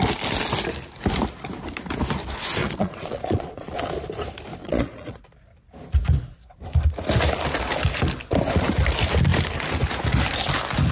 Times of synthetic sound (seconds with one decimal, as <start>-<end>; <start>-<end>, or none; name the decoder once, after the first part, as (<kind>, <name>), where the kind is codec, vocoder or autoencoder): 2.6-3.8 (vocoder, Vocos); 4.6-5.2